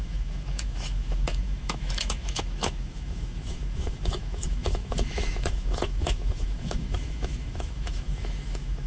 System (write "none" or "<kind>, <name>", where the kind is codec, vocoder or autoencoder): autoencoder, DAC-VAE